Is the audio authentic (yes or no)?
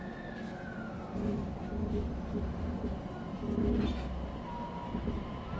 yes